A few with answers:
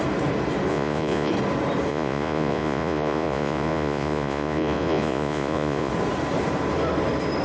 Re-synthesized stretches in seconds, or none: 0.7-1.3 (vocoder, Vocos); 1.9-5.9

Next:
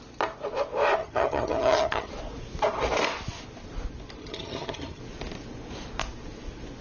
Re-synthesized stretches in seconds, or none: 1.0-2.1 (vocoder, HiFi-GAN); 4.2-5.0